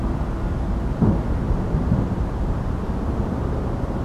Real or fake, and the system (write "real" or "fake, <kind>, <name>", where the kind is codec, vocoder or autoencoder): real